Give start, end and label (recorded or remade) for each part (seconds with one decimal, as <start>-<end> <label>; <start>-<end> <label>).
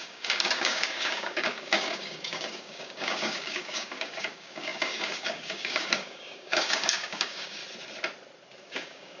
0.0-7.6 remade; 7.6-8.6 recorded; 8.6-9.2 remade